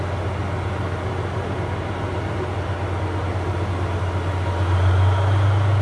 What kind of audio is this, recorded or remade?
recorded